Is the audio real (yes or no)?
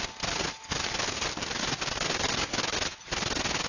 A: yes